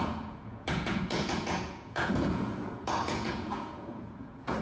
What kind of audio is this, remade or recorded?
remade